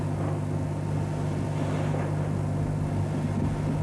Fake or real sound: real